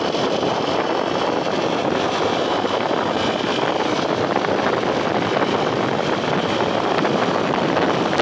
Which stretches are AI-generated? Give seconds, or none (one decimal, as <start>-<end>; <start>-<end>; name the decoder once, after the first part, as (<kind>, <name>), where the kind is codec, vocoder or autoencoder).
0.0-8.2 (vocoder, BigVGAN v2)